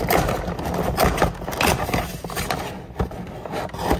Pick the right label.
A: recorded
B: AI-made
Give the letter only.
A